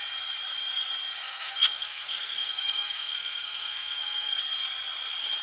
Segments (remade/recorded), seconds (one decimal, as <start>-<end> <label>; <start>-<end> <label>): 0.0-1.2 recorded; 1.2-4.4 remade; 4.4-5.4 recorded

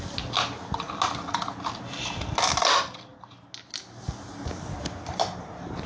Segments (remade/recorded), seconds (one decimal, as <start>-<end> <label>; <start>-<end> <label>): 0.0-5.9 recorded

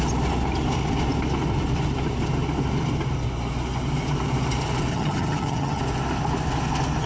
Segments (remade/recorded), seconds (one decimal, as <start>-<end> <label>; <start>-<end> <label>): 0.0-4.9 recorded; 4.9-5.8 remade; 5.8-7.1 recorded